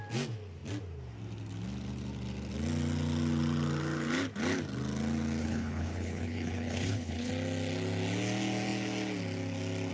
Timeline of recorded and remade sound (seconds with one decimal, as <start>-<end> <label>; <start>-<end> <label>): 0.0-5.4 recorded; 5.4-7.3 remade; 7.3-9.9 recorded